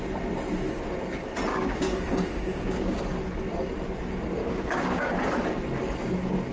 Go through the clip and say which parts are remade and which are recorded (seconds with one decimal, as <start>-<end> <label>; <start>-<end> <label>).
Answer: 0.0-1.5 recorded; 1.5-3.0 remade; 3.0-4.4 recorded; 4.4-5.2 remade; 5.2-6.5 recorded